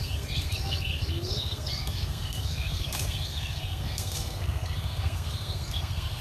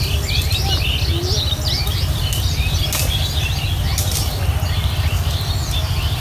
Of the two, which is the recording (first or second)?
second